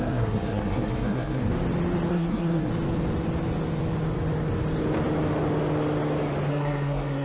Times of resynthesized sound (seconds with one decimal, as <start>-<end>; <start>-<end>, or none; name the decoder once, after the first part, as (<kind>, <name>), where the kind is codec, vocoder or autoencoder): 0.0-1.5 (codec, SNAC); 2.1-2.7; 6.5-7.2